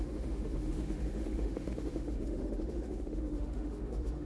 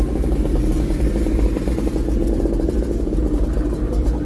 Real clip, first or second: second